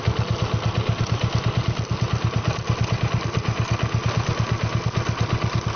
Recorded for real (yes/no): yes